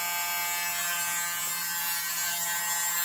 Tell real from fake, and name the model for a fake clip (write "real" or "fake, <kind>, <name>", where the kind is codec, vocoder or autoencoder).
real